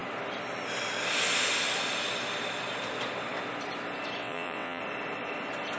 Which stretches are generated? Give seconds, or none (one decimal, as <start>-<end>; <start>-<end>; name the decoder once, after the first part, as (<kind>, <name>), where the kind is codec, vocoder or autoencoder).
4.2-4.8 (vocoder, WaveNeXt)